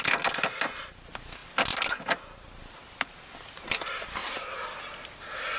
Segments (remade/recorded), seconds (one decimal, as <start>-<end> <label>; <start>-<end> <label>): 0.0-5.6 recorded